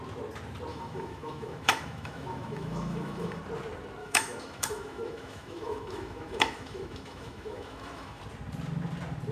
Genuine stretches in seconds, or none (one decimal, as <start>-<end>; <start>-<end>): 0.0-0.7; 3.4-4.0; 8.2-9.3